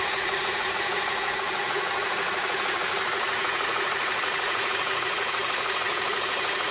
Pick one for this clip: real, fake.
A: fake